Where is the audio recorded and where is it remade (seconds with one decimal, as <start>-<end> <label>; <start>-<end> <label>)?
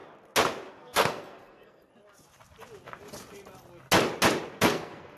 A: 0.0-0.7 recorded; 0.7-1.9 remade; 1.9-4.5 recorded; 4.5-5.2 remade